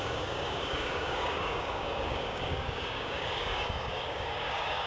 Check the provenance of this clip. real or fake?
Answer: fake